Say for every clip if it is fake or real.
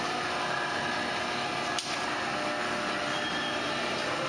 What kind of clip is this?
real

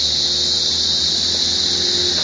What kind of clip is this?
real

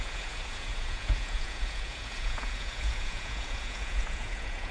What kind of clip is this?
fake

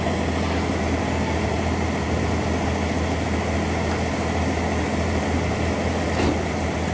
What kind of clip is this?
real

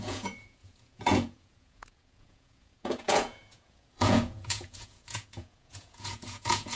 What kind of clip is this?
fake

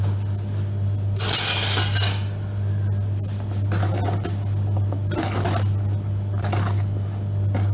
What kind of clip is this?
real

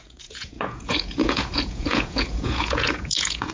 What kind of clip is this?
fake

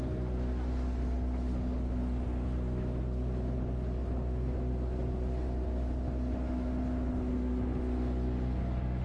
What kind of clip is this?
real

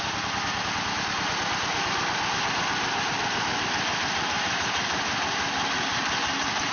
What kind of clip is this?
real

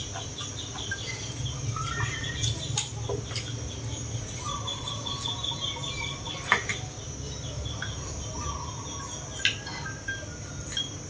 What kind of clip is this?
real